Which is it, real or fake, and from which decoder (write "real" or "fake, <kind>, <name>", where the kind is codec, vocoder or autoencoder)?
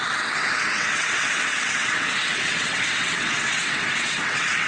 fake, vocoder, WaveNeXt